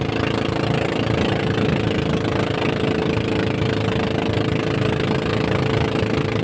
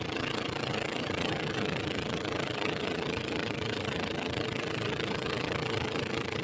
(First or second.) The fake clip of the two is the second